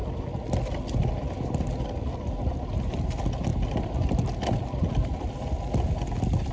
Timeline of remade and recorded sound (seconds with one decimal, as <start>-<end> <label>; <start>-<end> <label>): 0.0-6.5 recorded